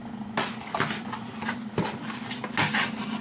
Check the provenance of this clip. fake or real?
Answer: real